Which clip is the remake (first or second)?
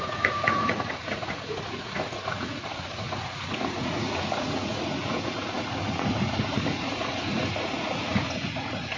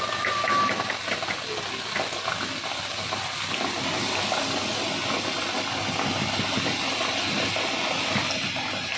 first